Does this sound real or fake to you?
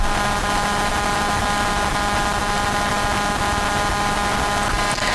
real